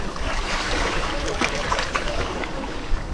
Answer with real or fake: fake